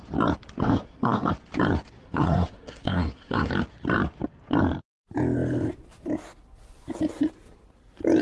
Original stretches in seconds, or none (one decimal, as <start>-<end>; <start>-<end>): 0.0-0.6; 1.3-2.0; 3.5-8.2